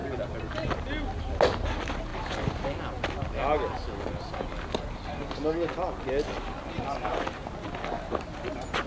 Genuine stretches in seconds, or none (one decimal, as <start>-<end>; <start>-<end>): 0.0-8.9